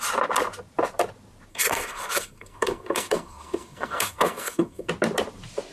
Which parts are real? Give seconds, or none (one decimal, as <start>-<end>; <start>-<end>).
0.0-1.5; 4.9-5.7